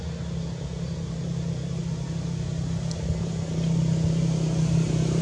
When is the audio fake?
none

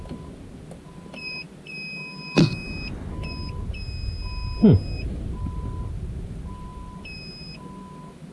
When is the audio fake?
none

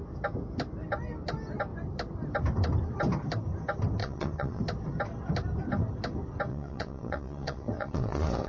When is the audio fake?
4.0-4.6 (vocoder, WaveNeXt); 6.5-8.5